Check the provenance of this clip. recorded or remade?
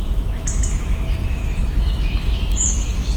remade